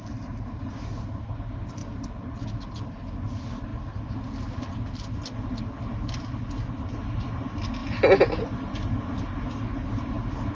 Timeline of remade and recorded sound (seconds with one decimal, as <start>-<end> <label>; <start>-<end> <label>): 0.0-10.5 recorded